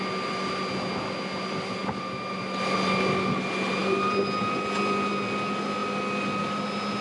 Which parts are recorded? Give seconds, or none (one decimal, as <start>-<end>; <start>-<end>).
0.0-7.0